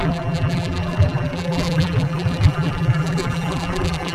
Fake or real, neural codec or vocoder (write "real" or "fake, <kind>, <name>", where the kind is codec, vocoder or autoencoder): fake, vocoder, BigVGAN v2